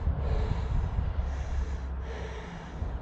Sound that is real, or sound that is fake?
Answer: real